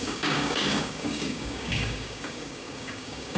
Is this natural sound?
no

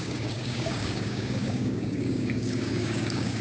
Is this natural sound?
no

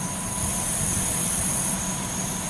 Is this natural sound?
yes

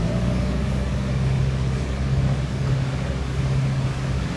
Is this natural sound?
no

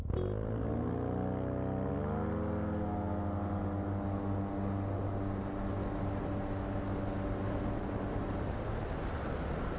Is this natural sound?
yes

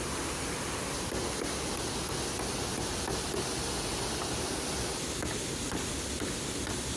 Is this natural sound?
yes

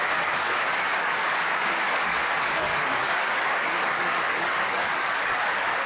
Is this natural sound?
no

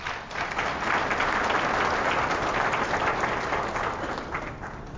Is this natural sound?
yes